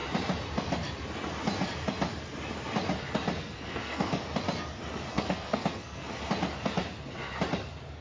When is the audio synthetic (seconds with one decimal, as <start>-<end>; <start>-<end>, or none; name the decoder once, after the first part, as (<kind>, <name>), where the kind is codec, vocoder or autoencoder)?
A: 3.4-4.2 (codec, SNAC); 5.1-6.1